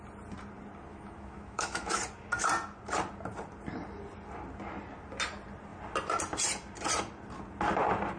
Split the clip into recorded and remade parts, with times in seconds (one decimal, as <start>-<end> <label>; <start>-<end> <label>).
0.0-0.9 recorded; 0.9-2.0 remade; 2.0-8.2 recorded